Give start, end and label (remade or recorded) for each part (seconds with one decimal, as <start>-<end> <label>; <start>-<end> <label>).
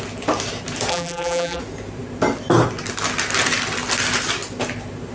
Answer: 0.0-0.9 recorded; 0.9-1.6 remade; 1.6-5.1 recorded